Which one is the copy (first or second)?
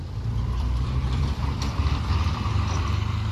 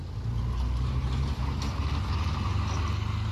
first